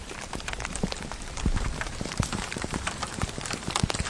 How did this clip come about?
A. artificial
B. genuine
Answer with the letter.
A